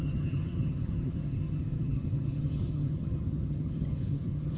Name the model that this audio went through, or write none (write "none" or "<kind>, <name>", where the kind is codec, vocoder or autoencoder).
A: vocoder, HiFi-GAN